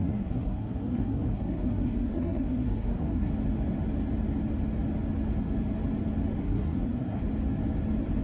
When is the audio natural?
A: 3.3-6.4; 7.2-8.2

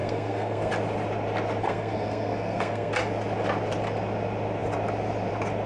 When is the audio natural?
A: 0.7-1.6; 2.9-5.7